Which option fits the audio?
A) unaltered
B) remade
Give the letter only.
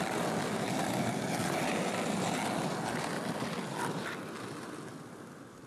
A